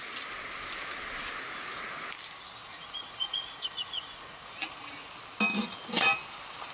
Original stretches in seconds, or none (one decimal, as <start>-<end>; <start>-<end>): 0.0-2.6; 5.1-6.7